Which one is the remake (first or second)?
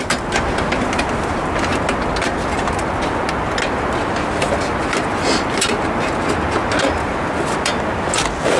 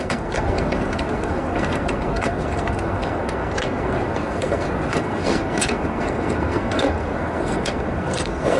second